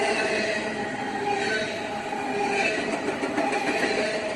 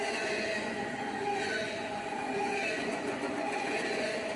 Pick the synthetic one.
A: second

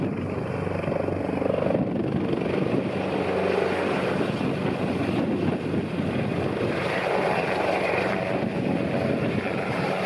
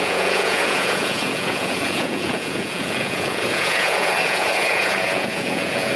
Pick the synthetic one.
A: second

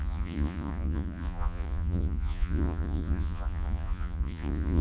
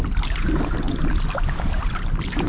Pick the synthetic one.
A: first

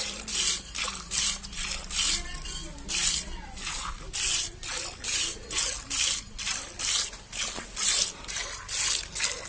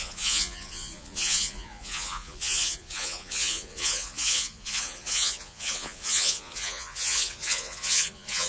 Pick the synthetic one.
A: second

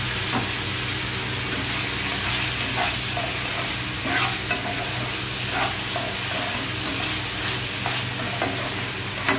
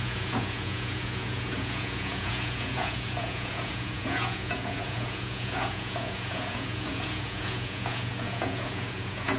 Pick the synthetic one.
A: second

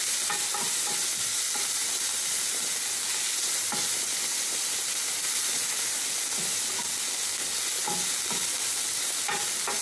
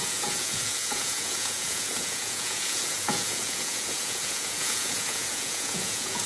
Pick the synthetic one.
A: second